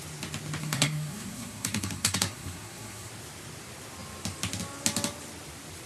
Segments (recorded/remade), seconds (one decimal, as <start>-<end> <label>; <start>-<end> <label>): 0.0-0.6 recorded; 0.6-3.1 remade; 3.1-5.9 recorded